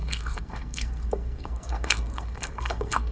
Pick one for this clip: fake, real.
fake